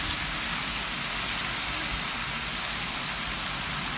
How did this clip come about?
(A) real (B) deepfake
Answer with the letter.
A